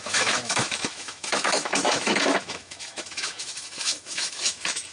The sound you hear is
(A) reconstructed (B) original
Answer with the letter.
A